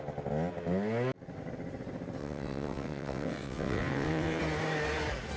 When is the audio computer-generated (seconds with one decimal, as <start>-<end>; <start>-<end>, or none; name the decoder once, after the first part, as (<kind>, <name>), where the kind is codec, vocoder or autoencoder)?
2.2-4.4 (vocoder, WaveNeXt)